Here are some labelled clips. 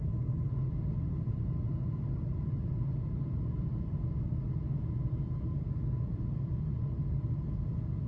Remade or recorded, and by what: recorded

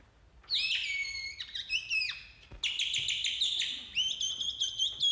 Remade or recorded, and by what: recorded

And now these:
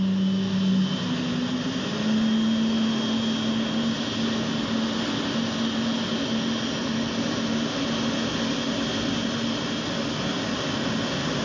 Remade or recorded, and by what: recorded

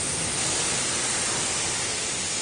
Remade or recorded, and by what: recorded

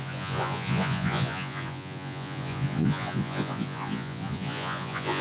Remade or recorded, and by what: remade, vocoder, Vocos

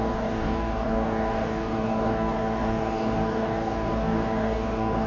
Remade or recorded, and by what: remade, codec, DAC